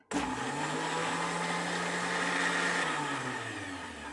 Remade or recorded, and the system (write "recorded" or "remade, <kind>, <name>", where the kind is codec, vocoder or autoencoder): recorded